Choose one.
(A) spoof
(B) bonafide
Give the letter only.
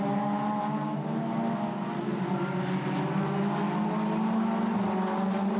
B